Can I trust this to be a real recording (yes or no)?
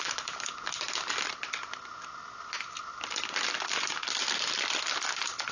no